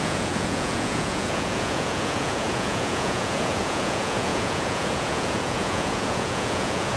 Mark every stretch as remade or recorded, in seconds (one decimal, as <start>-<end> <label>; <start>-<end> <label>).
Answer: 0.0-7.0 remade